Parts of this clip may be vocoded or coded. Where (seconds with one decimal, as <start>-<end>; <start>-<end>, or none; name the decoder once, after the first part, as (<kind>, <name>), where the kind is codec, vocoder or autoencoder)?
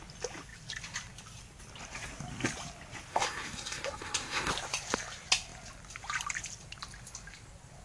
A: 3.1-4.5 (codec, SNAC)